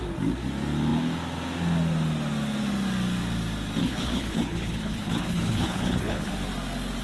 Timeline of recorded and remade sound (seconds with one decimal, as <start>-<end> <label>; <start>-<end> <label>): 0.0-3.8 recorded; 3.8-6.3 remade; 6.3-7.0 recorded